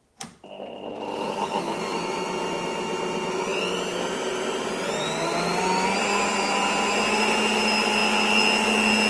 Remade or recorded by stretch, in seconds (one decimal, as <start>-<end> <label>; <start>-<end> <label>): 0.0-9.1 recorded